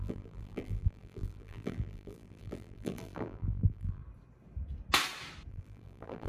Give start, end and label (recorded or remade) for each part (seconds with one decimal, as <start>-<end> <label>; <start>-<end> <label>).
0.0-4.0 remade; 4.0-5.5 recorded; 5.5-6.3 remade